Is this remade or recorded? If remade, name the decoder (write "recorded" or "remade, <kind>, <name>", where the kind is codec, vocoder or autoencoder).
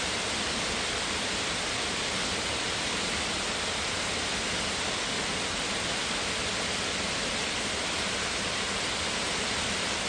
recorded